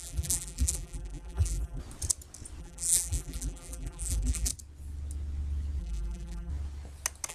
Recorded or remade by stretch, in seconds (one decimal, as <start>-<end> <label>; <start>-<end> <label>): 0.0-1.8 remade; 1.8-2.6 recorded; 2.6-4.5 remade; 4.5-5.8 recorded; 5.8-6.5 remade; 6.5-7.3 recorded